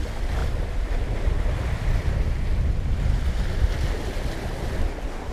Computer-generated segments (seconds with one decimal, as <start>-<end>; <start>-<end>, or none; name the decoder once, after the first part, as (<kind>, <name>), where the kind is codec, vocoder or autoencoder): 0.4-3.6 (vocoder, BigVGAN v2)

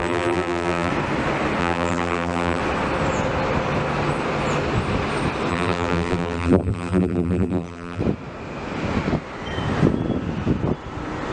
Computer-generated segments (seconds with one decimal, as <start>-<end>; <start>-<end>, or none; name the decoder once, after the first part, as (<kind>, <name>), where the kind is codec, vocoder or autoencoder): 0.0-0.9 (vocoder, BigVGAN v2); 1.6-2.6; 5.5-8.0

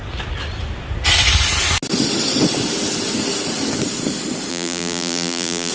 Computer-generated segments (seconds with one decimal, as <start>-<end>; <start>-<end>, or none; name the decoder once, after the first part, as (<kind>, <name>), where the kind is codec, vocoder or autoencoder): 4.5-5.7 (vocoder, BigVGAN v2)

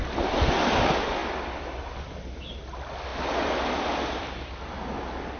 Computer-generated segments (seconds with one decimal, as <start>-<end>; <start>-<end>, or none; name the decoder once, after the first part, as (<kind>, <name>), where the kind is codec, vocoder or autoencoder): 1.2-2.0 (vocoder, BigVGAN v2)

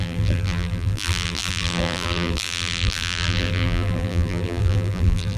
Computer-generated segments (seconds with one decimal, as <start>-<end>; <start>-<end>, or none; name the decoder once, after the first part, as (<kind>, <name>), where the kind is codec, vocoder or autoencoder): 0.0-5.4 (vocoder, BigVGAN v2)

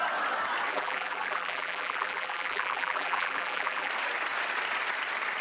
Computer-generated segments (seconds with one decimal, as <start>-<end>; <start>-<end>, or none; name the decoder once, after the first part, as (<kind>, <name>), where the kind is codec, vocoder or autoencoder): 0.7-3.9 (vocoder, BigVGAN v2)

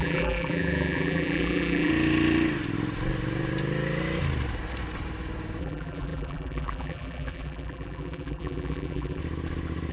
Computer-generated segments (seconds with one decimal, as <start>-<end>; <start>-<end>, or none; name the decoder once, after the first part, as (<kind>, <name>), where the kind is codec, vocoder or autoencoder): 0.0-1.9 (vocoder, BigVGAN v2); 5.6-9.2

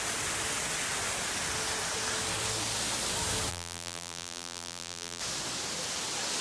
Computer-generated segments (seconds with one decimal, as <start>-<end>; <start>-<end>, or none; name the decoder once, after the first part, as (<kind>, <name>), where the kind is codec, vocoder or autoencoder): 3.5-5.2 (vocoder, BigVGAN v2)